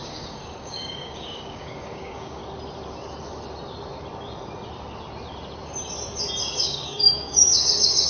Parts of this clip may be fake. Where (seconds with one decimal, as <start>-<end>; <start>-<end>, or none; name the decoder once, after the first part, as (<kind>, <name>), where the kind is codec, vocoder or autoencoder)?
0.0-2.4 (codec, DAC); 6.4-8.1